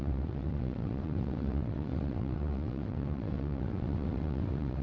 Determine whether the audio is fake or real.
fake